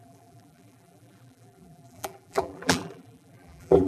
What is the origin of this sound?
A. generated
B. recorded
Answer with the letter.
A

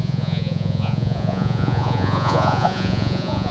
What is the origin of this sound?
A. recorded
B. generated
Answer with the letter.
B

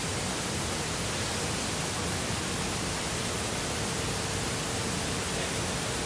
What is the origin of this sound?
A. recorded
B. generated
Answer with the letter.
A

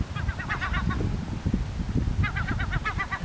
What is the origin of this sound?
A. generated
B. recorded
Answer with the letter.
B